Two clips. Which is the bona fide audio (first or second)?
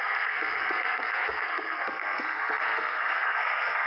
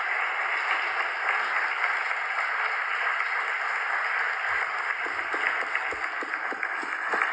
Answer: second